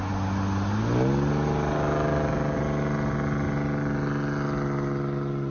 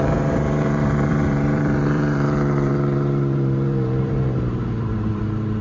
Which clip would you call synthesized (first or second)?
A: second